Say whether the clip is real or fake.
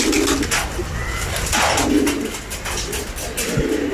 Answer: real